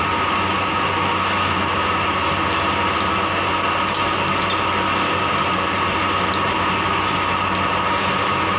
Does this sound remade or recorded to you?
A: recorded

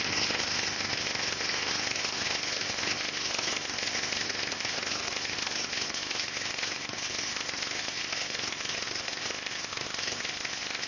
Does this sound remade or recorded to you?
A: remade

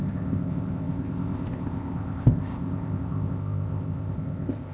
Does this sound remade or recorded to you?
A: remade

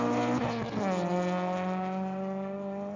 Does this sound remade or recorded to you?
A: recorded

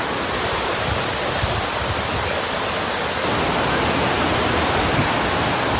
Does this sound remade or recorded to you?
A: recorded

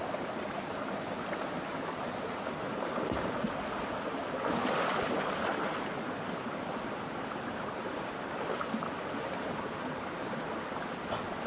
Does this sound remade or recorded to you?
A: recorded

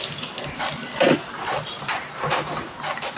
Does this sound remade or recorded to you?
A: recorded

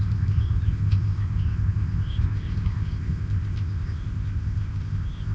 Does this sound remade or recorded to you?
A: remade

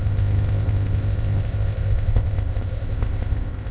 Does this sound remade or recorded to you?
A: remade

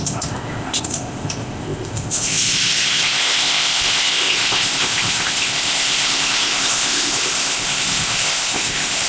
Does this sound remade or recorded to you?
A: remade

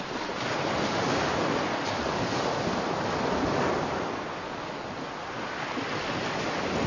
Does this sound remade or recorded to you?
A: recorded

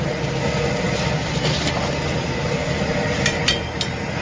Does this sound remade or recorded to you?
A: recorded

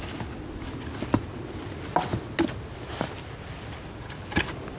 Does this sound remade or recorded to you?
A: recorded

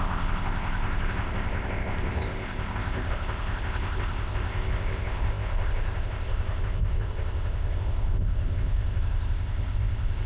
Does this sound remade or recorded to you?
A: remade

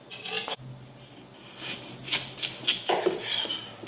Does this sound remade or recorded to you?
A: recorded